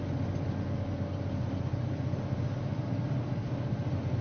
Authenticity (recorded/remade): recorded